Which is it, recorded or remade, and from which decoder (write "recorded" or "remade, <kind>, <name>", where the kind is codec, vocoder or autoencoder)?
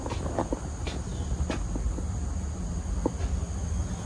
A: recorded